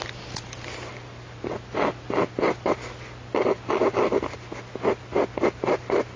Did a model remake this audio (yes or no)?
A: no